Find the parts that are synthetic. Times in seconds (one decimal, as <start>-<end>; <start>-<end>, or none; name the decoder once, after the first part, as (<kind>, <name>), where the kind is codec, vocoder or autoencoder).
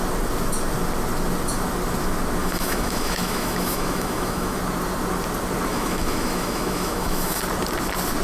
2.4-4.6 (autoencoder, DAC-VAE); 5.7-7.4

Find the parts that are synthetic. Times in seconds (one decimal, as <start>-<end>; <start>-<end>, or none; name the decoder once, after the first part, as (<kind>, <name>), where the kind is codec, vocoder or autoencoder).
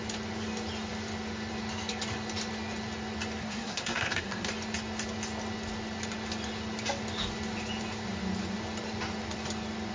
3.4-4.5 (codec, SNAC)